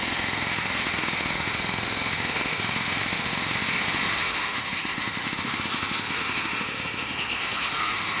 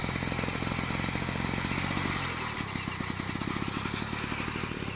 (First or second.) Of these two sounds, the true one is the second